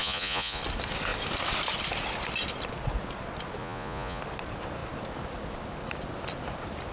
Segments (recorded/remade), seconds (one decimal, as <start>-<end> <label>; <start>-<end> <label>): 0.0-0.6 remade; 0.6-3.6 recorded; 3.6-4.2 remade; 4.2-6.9 recorded

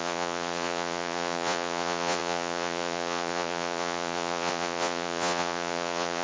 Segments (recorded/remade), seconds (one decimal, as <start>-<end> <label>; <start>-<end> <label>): 0.0-6.2 remade

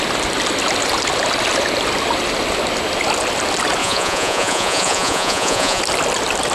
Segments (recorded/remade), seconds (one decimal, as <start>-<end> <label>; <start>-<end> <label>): 0.0-3.8 recorded; 3.8-5.8 remade; 5.8-6.5 recorded

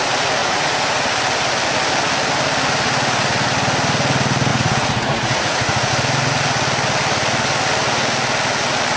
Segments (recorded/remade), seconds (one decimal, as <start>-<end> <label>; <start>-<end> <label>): 0.0-0.4 recorded; 0.4-1.0 remade; 1.0-4.5 recorded; 4.5-5.9 remade; 5.9-9.0 recorded

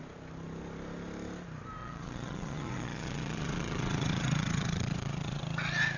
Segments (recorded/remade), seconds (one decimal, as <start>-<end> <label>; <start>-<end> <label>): 0.0-1.8 recorded; 1.8-5.4 remade; 5.4-6.0 recorded